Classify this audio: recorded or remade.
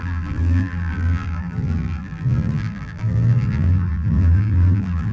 remade